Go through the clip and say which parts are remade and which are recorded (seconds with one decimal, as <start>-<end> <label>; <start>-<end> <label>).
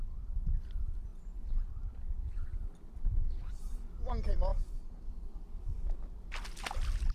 0.0-7.1 recorded